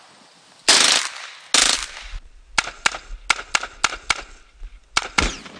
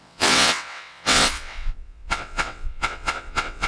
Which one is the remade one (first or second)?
second